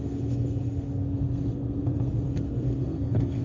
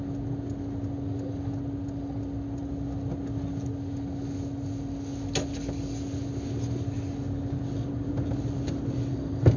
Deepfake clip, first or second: first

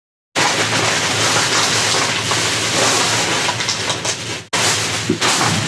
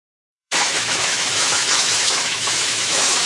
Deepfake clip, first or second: second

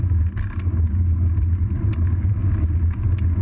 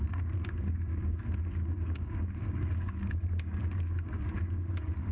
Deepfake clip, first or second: second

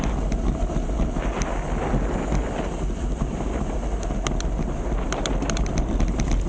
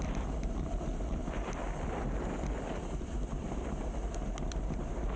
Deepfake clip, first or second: second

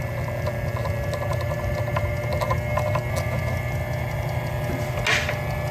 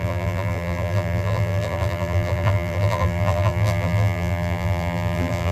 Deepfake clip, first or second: second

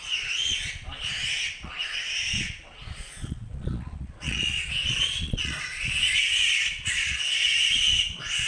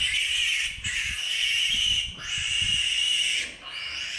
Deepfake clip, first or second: first